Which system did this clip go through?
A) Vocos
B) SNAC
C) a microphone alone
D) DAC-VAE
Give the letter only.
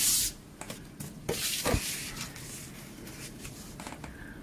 C